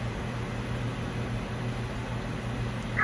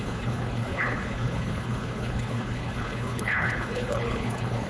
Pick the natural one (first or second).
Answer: first